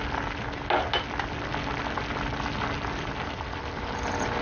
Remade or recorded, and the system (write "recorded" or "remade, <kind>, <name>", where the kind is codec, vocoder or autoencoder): recorded